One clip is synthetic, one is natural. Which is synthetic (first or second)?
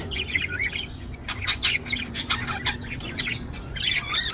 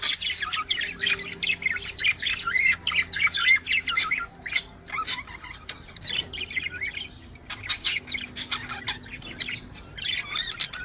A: first